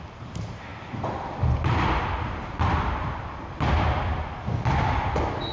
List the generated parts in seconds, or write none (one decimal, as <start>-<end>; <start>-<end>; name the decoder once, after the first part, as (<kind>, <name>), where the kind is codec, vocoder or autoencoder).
none